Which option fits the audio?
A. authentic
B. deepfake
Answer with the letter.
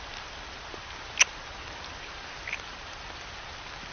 A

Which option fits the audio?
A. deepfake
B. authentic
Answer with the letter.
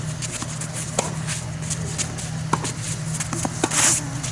B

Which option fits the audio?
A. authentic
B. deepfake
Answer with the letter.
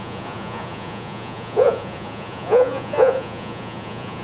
B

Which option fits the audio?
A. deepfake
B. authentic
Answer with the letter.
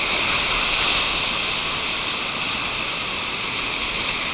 B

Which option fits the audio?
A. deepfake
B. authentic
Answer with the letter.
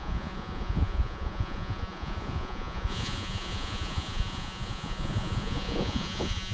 A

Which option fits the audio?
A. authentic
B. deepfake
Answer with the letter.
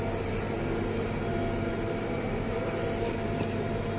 A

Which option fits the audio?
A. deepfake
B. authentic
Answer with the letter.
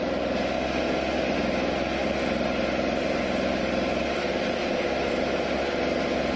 B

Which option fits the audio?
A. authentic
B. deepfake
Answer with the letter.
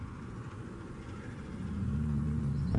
B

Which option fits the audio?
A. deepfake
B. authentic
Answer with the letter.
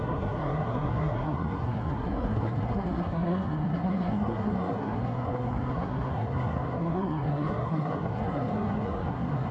A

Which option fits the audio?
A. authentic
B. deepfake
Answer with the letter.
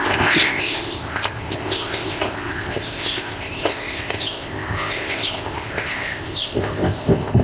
B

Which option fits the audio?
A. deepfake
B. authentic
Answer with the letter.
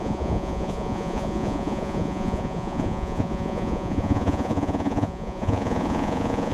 A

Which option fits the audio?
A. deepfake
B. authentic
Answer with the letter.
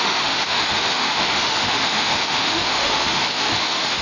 A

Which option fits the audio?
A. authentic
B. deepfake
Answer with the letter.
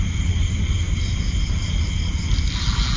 A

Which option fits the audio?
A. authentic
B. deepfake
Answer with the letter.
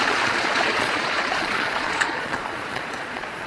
B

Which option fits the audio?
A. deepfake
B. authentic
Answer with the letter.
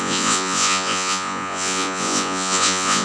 A